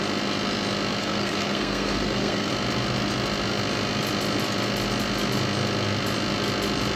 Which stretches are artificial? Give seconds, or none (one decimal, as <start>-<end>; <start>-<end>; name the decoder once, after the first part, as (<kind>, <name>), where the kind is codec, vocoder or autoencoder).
1.0-2.5 (codec, SNAC)